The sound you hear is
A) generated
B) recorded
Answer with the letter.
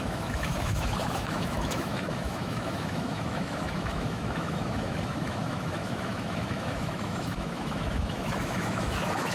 A